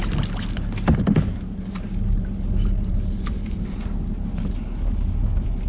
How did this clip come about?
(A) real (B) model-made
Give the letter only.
A